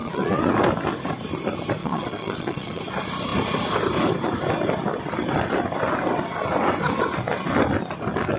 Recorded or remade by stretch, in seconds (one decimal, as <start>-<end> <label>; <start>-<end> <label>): 0.0-0.5 remade; 0.5-1.8 recorded; 1.8-2.8 remade; 2.8-8.4 recorded